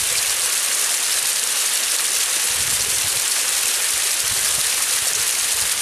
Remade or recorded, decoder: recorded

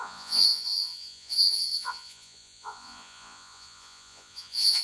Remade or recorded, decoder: remade, vocoder, Vocos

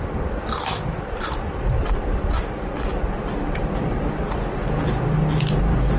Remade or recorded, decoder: recorded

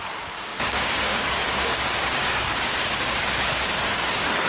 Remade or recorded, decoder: remade, codec, DAC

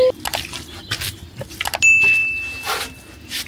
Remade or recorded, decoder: recorded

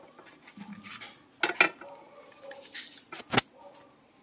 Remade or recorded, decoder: recorded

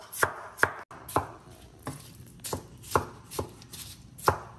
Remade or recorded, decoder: recorded